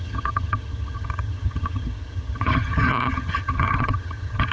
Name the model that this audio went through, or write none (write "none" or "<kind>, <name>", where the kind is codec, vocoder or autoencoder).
vocoder, HiFi-GAN